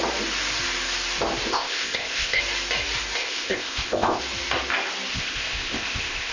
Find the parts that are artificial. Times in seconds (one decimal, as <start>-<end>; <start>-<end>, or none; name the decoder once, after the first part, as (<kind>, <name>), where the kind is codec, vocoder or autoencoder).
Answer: 1.5-2.4 (codec, ZipCodec); 3.2-4.2; 5.1-6.3

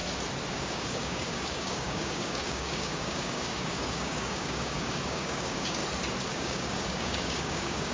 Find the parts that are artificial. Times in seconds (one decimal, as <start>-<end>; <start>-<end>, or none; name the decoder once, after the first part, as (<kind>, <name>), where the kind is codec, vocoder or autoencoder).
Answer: 0.5-5.8 (codec, DAC); 6.3-7.9

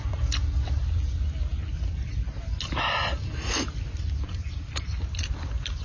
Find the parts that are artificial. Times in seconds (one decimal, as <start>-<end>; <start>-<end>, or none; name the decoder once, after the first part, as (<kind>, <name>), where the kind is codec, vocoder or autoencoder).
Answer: none

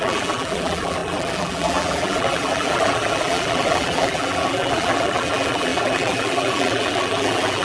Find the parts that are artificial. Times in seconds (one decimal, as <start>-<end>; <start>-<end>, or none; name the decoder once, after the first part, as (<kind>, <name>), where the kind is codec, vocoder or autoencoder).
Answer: 0.0-7.6 (vocoder, BigVGAN v2)

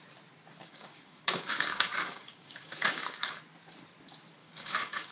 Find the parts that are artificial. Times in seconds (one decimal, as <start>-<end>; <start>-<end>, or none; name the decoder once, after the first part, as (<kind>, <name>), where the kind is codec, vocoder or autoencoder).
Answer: 0.6-3.4 (codec, DAC); 4.4-5.1

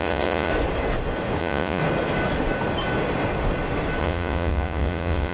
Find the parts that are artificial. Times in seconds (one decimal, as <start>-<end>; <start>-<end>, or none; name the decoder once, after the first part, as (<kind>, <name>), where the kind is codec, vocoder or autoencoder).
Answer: 0.0-0.5 (vocoder, Vocos); 1.4-1.8; 4.0-5.3